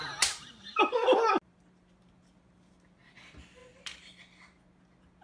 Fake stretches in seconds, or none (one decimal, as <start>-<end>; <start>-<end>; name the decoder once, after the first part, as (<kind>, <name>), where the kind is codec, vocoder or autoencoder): none